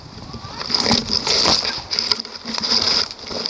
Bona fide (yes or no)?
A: yes